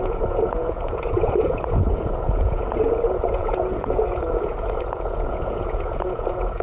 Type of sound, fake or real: fake